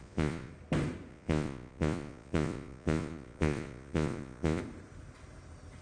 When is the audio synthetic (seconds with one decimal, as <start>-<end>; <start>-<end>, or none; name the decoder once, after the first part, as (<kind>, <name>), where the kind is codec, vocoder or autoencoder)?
0.0-0.5 (vocoder, Vocos); 1.1-4.6